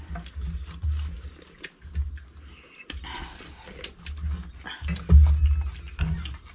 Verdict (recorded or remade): recorded